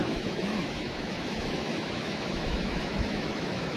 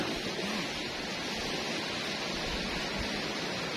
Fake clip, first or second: first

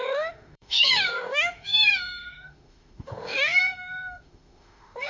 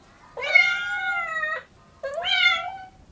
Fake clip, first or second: first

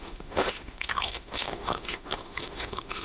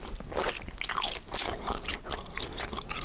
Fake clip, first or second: first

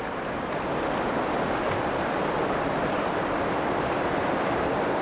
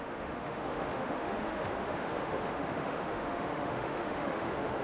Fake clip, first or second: second